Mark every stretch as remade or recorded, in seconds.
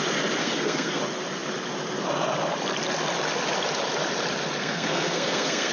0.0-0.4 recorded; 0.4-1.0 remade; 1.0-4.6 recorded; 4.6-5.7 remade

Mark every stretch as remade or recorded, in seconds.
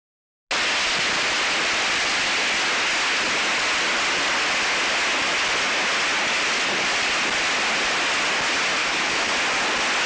0.0-8.8 recorded; 8.8-9.3 remade; 9.3-10.1 recorded